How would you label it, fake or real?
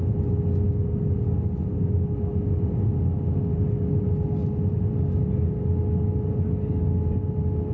real